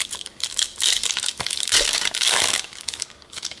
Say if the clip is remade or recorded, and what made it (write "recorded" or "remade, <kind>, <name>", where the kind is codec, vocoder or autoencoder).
remade, codec, DAC